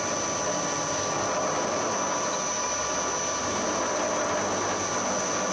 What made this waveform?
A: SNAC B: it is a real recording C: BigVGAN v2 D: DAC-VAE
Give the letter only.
B